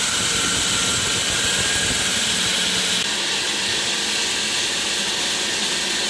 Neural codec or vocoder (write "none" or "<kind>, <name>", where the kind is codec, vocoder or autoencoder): none